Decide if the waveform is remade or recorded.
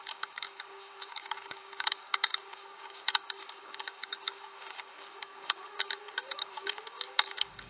remade